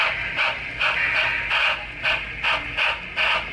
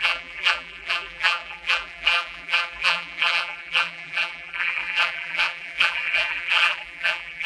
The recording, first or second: first